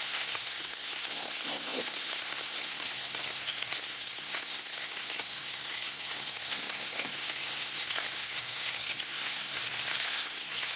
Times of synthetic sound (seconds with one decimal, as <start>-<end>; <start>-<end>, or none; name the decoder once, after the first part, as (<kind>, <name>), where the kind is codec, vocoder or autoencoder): 0.0-10.8 (codec, SNAC)